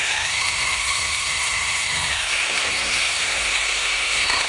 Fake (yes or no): yes